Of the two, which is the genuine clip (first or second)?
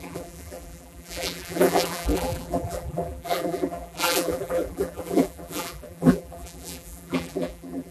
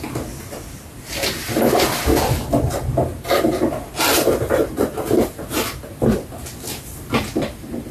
second